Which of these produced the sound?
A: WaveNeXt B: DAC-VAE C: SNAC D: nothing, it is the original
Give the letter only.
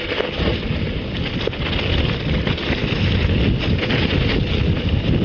D